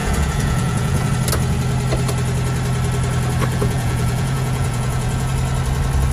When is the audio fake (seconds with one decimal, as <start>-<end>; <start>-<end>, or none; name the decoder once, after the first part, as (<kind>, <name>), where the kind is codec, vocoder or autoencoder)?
0.0-1.1 (vocoder, Vocos); 3.5-5.3